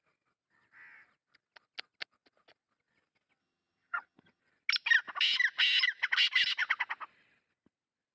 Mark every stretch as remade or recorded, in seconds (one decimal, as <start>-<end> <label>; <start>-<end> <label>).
0.0-3.4 recorded; 3.4-4.4 remade; 4.4-8.1 recorded